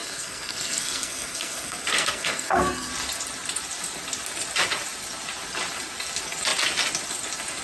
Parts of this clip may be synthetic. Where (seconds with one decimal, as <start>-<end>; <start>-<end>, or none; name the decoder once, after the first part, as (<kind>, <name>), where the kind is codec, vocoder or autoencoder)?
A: 0.0-2.9 (codec, SNAC)